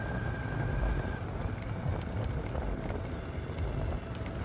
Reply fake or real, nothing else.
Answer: real